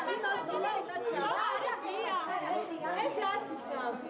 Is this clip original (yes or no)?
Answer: yes